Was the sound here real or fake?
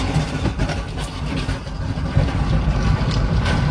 fake